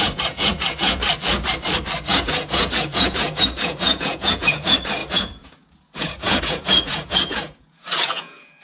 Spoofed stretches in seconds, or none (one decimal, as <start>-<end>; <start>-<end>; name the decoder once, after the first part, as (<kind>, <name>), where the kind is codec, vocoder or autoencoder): 0.0-1.0 (vocoder, Vocos); 2.1-8.6